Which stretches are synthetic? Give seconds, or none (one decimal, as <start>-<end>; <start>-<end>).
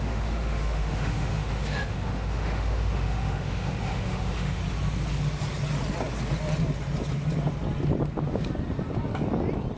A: 0.0-4.6